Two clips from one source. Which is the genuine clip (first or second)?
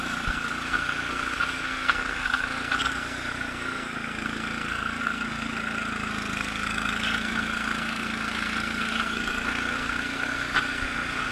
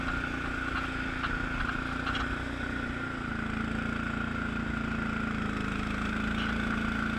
second